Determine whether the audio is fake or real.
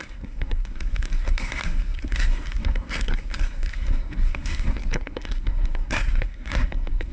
fake